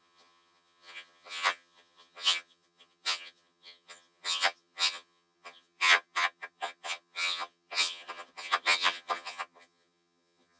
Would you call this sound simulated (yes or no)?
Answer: yes